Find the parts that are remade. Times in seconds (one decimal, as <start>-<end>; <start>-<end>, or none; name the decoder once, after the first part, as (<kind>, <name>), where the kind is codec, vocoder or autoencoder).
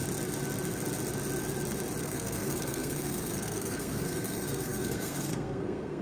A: 2.0-6.0 (codec, SNAC)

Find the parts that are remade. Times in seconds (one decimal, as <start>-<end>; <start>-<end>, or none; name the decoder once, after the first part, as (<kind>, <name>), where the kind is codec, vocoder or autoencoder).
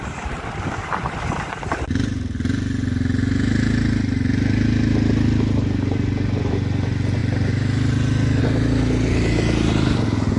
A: none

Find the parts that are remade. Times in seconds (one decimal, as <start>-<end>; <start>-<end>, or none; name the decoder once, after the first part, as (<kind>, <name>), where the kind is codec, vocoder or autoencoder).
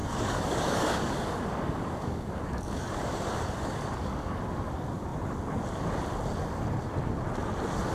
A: 0.0-4.4 (codec, DAC)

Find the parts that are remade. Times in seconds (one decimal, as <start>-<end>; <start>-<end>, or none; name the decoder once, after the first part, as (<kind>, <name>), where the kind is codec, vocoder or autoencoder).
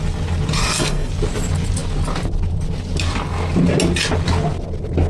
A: 0.6-1.1 (codec, SNAC)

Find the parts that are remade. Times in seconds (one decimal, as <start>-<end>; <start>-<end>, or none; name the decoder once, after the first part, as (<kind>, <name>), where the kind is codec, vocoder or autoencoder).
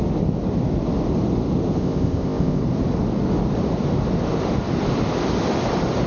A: 1.8-2.6 (codec, ZipCodec)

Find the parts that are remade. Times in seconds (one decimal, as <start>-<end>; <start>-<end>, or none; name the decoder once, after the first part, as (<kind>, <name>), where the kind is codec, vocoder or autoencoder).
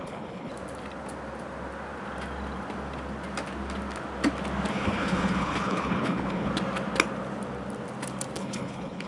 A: 0.0-0.5 (codec, HILCodec); 4.7-6.5; 8.4-9.1